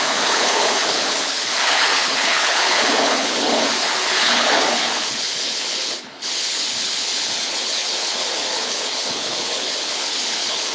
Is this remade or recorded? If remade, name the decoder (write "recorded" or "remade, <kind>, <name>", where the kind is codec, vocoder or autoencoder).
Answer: remade, codec, HILCodec